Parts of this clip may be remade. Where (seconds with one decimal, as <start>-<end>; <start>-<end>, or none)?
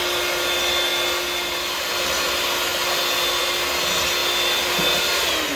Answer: none